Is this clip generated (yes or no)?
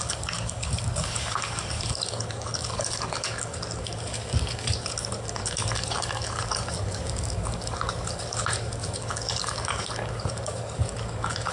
yes